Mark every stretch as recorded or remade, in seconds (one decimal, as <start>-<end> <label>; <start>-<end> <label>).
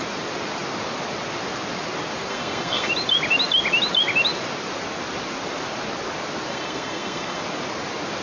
0.0-2.3 recorded; 2.3-2.9 remade; 2.9-6.5 recorded; 6.5-7.4 remade; 7.4-8.2 recorded